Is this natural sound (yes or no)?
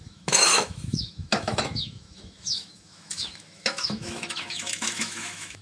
no